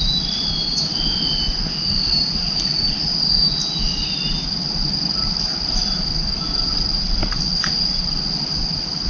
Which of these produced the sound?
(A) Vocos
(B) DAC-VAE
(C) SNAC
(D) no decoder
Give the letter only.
D